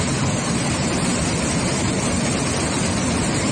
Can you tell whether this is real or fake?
real